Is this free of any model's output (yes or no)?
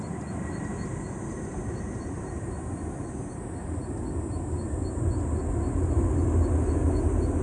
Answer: yes